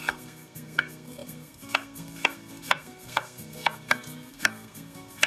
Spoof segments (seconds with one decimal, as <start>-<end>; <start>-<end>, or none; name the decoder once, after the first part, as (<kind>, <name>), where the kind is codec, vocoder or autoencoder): 0.0-5.3 (codec, SNAC)